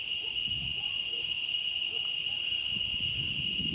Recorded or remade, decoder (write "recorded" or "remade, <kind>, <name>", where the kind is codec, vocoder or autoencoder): recorded